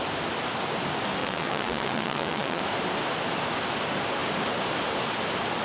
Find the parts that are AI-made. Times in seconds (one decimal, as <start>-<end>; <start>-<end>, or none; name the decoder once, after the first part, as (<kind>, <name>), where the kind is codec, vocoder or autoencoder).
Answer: 1.2-2.6 (vocoder, WaveNeXt)